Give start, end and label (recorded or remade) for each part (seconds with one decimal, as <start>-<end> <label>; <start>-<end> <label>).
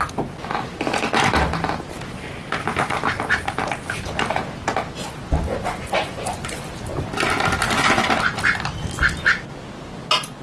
0.0-5.5 recorded; 5.5-6.6 remade; 6.6-10.4 recorded